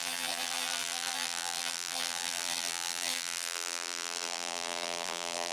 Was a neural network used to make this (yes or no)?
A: yes